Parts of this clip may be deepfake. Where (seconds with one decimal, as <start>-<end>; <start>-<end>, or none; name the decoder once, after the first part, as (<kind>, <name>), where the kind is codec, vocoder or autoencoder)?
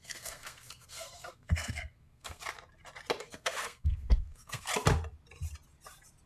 0.0-2.4 (codec, SNAC); 3.2-4.7